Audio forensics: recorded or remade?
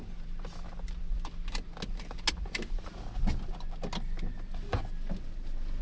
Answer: recorded